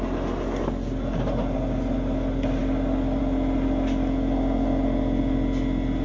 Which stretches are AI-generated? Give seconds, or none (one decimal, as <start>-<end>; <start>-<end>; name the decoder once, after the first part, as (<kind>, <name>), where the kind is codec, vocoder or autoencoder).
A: none

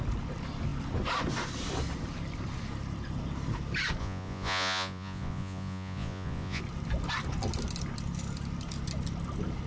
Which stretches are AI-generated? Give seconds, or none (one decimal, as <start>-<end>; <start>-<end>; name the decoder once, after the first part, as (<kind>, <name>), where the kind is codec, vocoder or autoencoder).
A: 4.0-6.6 (vocoder, Vocos)

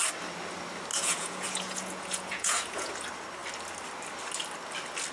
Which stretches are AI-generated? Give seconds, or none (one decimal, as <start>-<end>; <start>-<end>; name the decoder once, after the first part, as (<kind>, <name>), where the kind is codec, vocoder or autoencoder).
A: 0.9-2.9 (vocoder, Vocos)

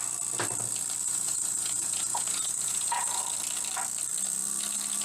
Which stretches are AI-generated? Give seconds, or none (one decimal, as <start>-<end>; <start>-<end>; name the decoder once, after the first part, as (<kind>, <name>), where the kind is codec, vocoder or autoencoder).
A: 1.0-3.2 (vocoder, Vocos)